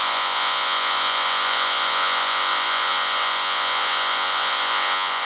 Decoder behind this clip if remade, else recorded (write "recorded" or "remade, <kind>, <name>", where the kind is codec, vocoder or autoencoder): remade, vocoder, Vocos